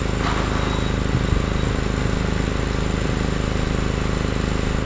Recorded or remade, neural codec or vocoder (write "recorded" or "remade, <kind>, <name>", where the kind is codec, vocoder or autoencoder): recorded